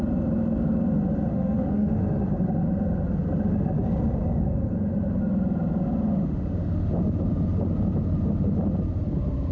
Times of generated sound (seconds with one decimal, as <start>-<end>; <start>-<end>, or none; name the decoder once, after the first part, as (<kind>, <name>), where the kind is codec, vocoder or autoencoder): 1.3-2.0 (autoencoder, DAC-VAE); 6.2-6.9